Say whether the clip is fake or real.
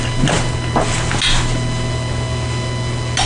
real